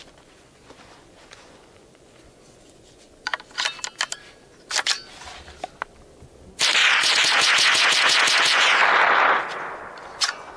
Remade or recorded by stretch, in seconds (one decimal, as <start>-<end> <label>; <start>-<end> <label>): 0.0-3.3 remade; 3.3-6.9 recorded; 6.9-8.8 remade; 8.8-9.9 recorded; 9.9-10.6 remade